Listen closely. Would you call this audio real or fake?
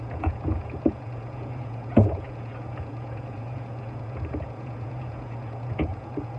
fake